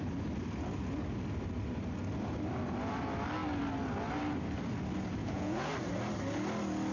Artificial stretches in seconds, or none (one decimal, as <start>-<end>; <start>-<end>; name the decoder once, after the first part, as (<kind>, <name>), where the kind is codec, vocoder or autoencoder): 5.2-5.7 (vocoder, Vocos)